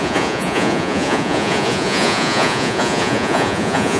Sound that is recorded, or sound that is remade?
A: remade